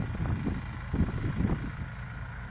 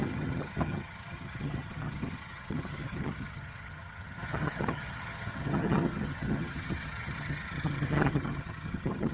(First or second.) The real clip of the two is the first